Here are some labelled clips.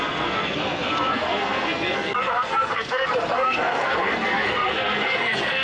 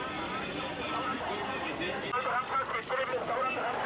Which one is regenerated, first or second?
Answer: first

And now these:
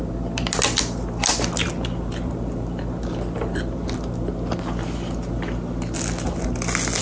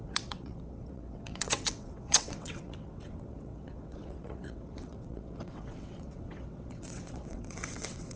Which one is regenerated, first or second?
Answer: second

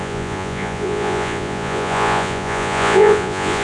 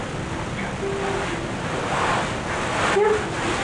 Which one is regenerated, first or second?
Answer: first